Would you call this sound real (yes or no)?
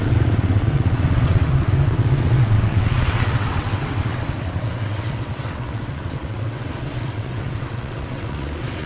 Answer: no